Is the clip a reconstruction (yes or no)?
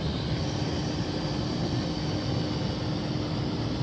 yes